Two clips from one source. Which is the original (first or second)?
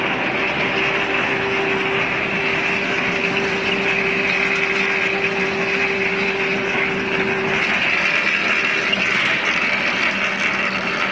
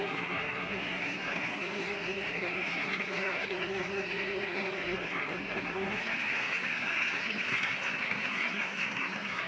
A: first